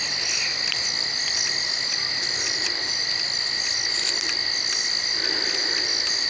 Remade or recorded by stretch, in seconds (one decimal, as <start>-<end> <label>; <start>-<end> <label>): 0.0-6.3 recorded